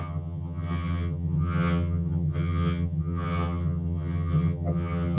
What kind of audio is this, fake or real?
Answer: fake